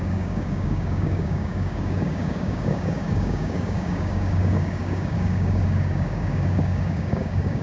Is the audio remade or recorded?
remade